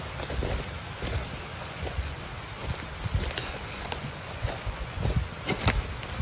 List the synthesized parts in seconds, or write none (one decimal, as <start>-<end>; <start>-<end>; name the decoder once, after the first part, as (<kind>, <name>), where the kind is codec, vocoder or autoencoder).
1.5-2.2 (vocoder, Vocos); 3.4-5.1